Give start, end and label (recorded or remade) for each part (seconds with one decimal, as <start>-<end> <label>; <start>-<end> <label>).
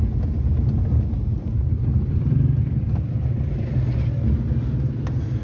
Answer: 0.0-5.4 recorded